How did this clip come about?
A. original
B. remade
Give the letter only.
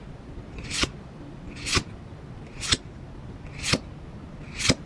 A